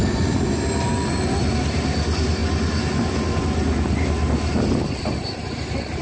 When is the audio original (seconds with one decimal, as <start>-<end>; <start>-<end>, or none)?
0.0-6.0